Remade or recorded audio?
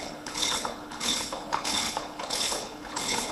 remade